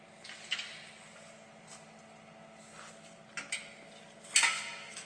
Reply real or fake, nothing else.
real